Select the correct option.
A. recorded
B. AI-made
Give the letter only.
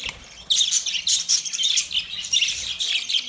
B